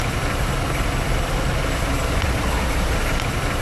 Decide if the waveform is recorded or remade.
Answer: recorded